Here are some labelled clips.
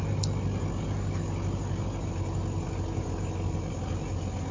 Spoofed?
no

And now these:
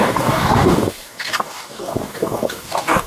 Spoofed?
yes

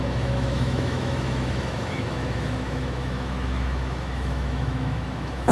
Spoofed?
yes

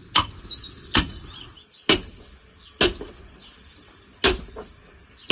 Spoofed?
no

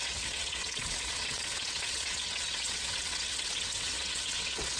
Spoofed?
yes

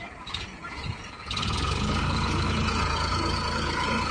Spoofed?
yes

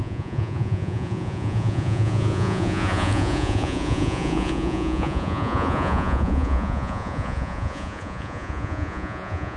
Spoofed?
yes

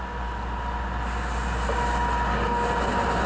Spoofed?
no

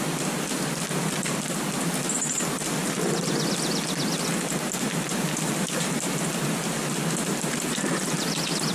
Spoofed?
no